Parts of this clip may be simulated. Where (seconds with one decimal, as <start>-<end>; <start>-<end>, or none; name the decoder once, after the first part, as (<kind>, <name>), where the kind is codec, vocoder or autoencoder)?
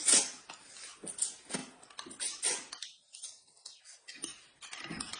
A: none